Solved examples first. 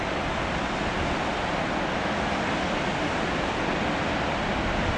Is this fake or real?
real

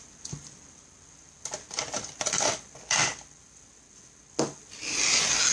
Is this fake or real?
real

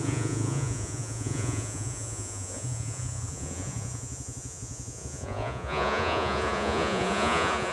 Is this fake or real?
fake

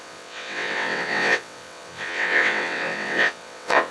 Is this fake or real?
fake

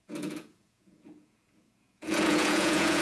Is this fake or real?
fake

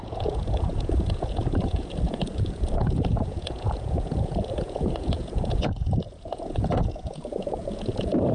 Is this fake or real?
fake